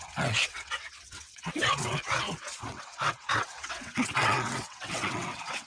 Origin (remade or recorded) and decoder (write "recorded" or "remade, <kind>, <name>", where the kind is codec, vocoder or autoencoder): remade, vocoder, WaveNeXt